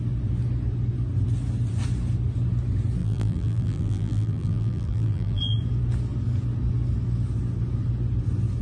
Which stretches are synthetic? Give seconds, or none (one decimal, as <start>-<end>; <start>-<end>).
3.0-5.6